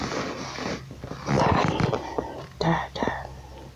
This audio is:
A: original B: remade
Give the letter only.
A